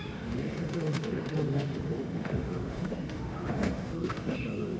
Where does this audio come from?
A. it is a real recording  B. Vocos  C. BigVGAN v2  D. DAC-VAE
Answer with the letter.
D